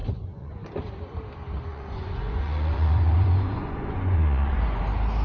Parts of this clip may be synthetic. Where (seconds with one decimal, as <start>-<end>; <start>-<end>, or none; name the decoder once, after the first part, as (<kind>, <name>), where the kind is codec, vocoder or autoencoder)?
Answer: 0.0-0.6 (vocoder, Vocos); 1.7-4.8